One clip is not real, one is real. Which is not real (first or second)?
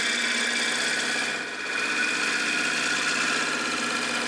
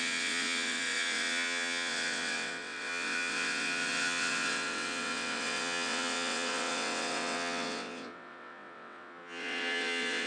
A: second